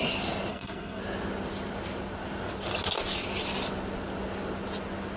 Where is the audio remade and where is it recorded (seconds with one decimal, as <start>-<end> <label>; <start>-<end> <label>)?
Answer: 0.0-0.5 recorded; 0.5-1.0 remade; 1.0-5.2 recorded